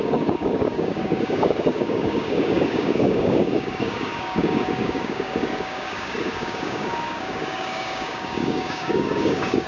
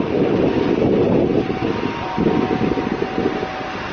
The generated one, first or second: first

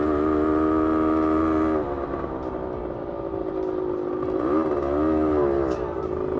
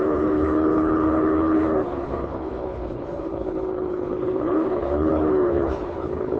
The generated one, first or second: second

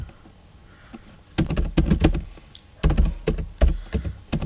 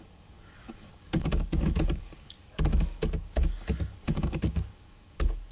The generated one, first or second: second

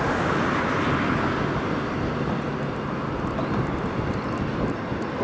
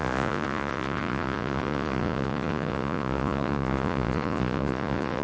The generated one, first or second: second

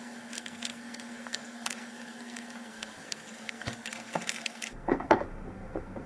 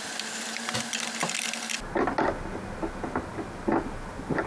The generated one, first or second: first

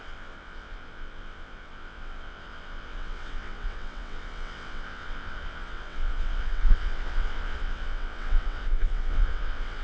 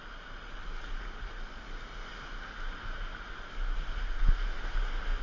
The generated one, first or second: first